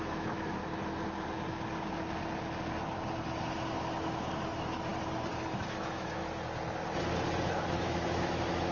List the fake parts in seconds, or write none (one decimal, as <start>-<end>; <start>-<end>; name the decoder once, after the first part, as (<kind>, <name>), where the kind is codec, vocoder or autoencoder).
0.0-0.6 (autoencoder, DAC-VAE); 3.5-4.9; 5.5-6.2; 7.5-8.7